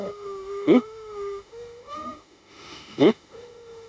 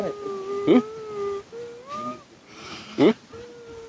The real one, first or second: second